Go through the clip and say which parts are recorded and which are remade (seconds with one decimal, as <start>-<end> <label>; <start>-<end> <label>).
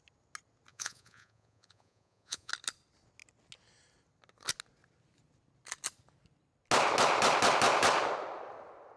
0.0-0.7 recorded; 0.7-2.5 remade; 2.5-9.0 recorded